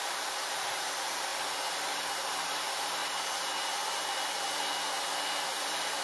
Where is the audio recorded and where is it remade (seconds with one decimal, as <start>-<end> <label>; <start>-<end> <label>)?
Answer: 0.0-1.3 remade; 1.3-1.8 recorded; 1.8-3.0 remade; 3.0-5.5 recorded; 5.5-6.0 remade